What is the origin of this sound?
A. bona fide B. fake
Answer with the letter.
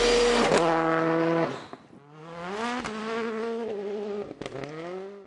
A